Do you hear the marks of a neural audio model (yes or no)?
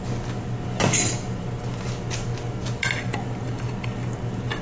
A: no